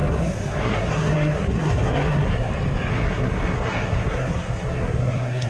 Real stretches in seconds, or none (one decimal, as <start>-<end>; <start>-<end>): 2.5-2.9